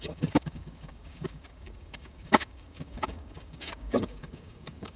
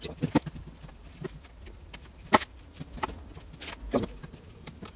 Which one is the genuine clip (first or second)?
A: second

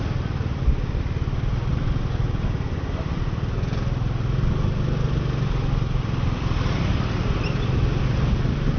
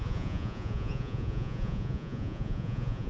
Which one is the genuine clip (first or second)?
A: first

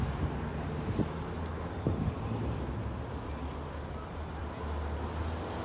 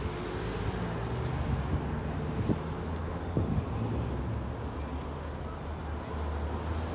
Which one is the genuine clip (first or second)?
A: second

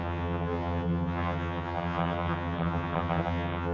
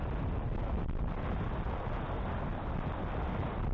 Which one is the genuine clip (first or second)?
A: second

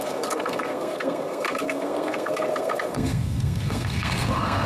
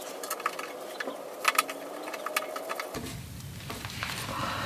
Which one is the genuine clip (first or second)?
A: second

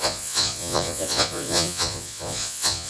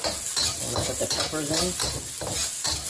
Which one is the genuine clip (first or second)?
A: second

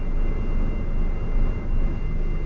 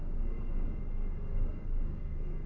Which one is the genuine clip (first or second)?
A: first